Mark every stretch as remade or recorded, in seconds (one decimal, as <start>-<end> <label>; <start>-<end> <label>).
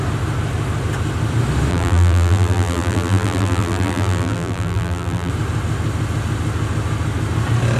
0.0-1.7 recorded; 1.7-5.3 remade; 5.3-7.8 recorded